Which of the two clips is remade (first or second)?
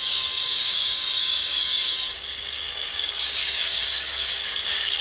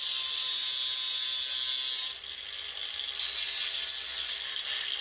first